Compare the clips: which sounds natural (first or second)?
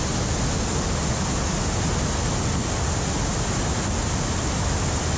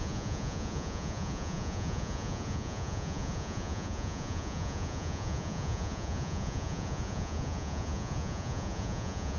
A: first